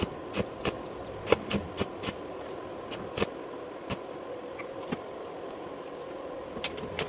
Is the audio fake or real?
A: real